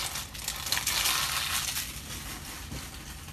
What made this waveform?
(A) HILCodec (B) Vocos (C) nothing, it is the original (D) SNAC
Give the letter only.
C